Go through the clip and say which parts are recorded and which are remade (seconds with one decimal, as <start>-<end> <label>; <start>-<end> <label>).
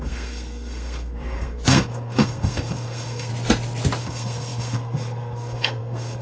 0.0-3.3 remade; 3.3-4.0 recorded; 4.0-6.2 remade